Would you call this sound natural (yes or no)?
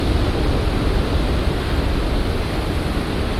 yes